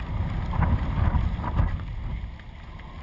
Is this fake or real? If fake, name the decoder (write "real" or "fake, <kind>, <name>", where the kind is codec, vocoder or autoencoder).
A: real